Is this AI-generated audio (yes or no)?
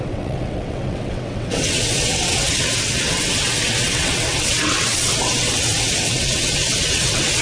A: yes